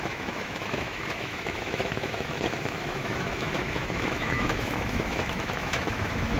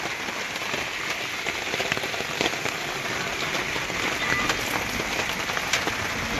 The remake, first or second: first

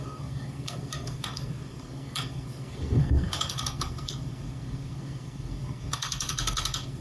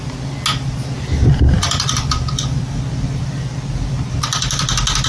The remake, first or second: first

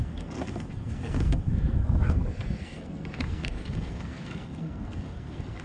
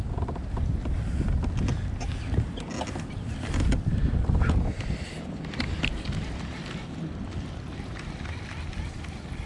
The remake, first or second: first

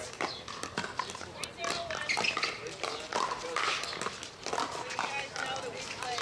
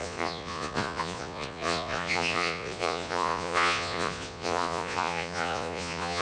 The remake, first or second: second